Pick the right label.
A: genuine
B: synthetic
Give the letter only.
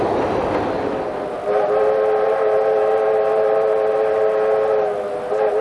A